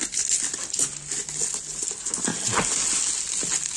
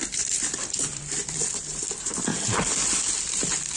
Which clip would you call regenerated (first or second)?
second